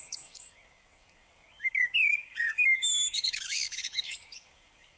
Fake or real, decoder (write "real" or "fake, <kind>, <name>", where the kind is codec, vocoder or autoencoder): fake, codec, DAC